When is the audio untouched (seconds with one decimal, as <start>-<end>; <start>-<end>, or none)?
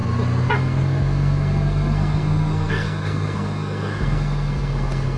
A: 0.0-0.5